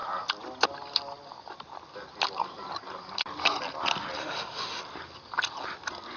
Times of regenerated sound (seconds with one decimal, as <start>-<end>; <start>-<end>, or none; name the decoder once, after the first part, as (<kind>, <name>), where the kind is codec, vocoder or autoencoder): 4.2-4.8 (autoencoder, DAC-VAE)